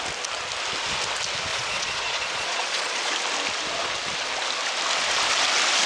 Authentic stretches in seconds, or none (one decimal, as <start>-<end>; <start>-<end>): 0.0-1.5; 3.1-5.9